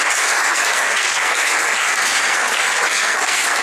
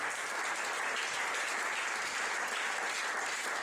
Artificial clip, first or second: first